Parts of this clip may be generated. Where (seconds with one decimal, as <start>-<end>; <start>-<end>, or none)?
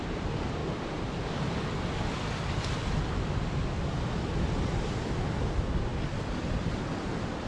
none